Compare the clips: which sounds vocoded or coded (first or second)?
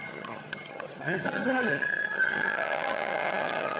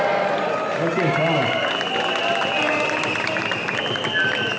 first